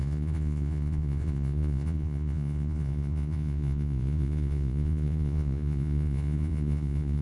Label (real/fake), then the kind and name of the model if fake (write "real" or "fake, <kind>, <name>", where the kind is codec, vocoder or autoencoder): fake, vocoder, Vocos